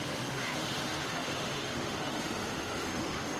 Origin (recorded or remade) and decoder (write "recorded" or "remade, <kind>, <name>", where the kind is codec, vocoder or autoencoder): remade, autoencoder, DAC-VAE